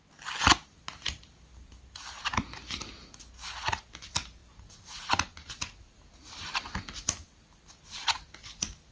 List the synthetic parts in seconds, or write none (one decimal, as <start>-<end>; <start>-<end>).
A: none